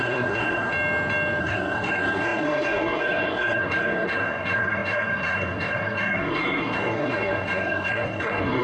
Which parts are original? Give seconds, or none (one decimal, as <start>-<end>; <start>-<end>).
0.7-1.4